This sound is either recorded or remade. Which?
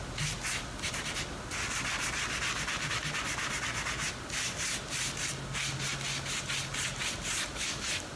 recorded